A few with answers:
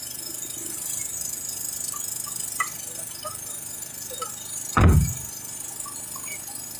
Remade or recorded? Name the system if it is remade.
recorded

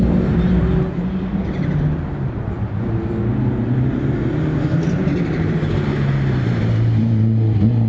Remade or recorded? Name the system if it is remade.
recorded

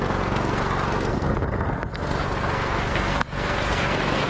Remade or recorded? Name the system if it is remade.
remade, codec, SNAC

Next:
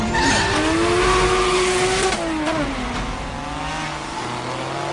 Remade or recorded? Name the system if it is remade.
recorded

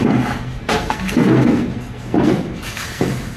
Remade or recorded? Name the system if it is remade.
remade, codec, SNAC